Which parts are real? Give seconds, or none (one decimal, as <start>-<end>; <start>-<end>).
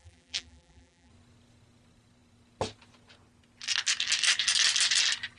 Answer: 1.1-5.4